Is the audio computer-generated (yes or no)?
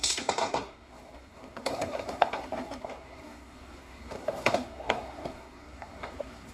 yes